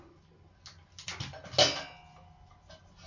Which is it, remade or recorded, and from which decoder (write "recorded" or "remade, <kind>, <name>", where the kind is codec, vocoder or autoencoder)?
recorded